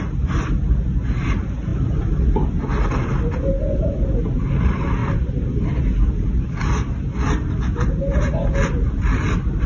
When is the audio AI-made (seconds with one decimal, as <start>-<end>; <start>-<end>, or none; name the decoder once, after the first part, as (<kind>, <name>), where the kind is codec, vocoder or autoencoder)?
none